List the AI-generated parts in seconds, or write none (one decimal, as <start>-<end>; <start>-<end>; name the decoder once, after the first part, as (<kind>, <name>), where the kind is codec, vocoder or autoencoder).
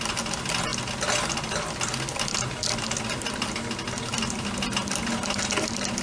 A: none